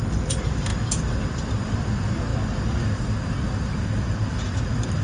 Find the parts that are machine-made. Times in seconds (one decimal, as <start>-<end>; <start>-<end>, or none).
none